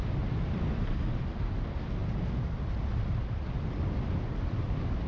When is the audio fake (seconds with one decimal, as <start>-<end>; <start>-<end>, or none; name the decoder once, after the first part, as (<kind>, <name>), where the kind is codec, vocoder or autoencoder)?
none